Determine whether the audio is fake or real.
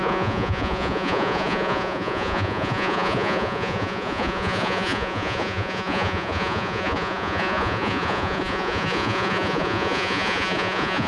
fake